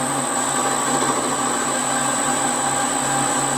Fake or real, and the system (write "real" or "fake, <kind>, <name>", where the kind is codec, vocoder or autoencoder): real